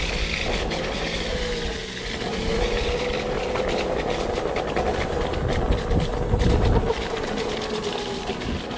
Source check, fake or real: real